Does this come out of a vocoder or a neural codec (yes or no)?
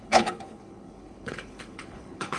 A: yes